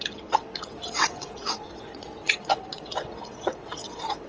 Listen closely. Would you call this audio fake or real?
fake